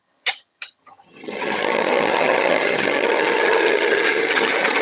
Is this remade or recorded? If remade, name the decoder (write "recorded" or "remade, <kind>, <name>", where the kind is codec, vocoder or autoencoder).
remade, vocoder, HiFi-GAN